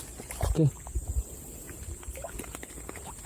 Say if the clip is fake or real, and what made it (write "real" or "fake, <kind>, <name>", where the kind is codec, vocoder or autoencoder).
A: fake, vocoder, BigVGAN v2